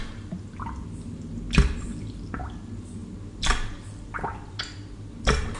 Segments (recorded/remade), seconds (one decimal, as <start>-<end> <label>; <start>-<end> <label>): 0.0-5.6 recorded